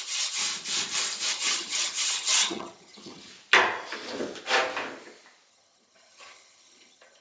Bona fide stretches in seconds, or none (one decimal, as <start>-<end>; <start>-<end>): 0.4-1.3; 3.3-5.5